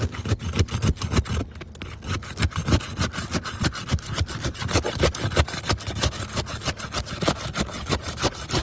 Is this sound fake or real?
real